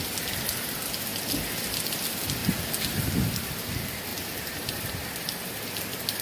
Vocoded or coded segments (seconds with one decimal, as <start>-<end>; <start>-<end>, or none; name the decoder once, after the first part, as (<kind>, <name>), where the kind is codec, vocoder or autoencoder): 4.1-4.9 (vocoder, BigVGAN v2)